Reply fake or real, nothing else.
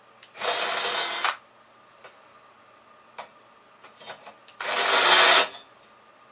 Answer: real